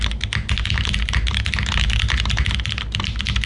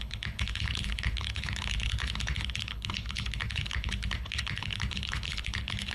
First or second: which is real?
first